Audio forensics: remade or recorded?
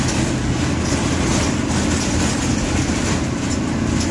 recorded